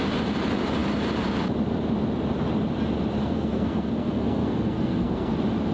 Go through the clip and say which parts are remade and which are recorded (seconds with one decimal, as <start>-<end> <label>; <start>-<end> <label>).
0.0-3.2 recorded; 3.2-5.3 remade; 5.3-5.7 recorded